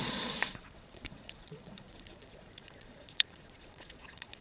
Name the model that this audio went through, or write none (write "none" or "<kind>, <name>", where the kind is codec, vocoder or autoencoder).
vocoder, Vocos